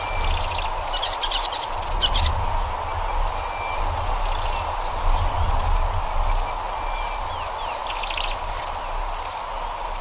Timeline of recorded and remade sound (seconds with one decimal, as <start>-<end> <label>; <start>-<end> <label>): 0.0-10.0 recorded

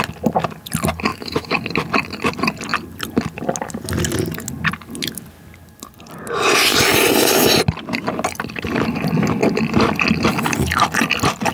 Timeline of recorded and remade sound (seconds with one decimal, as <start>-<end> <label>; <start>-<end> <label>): 0.0-1.1 recorded; 1.1-1.6 remade; 1.6-11.5 recorded

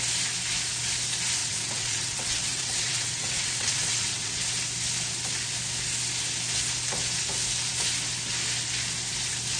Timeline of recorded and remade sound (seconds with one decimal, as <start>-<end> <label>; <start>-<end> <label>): 0.0-1.4 recorded; 1.4-4.4 remade; 4.4-9.6 recorded